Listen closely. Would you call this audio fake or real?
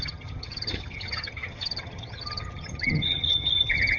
fake